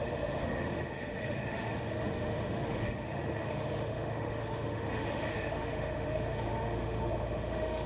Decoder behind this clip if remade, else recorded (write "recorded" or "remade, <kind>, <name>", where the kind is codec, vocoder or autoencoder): remade, autoencoder, DAC-VAE